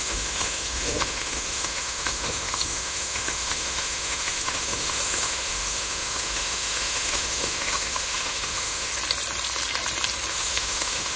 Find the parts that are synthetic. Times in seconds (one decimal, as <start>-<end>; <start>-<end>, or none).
0.0-8.9; 10.3-11.2